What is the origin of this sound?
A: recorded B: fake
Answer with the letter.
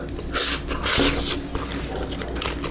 A